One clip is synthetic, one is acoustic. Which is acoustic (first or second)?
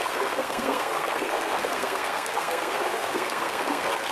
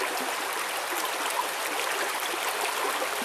second